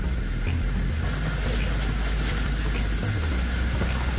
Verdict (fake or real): real